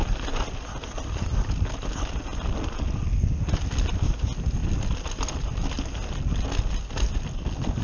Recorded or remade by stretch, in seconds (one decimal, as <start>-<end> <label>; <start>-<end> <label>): 0.0-7.8 recorded